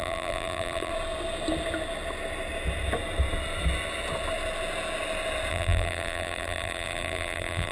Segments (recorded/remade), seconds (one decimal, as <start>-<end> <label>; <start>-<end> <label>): 0.0-0.9 remade; 0.9-5.5 recorded; 5.5-7.7 remade